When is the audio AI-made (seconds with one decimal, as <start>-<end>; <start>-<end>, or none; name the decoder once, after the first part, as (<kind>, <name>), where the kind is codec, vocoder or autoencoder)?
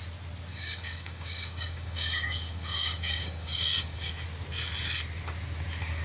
0.5-4.1 (codec, DAC)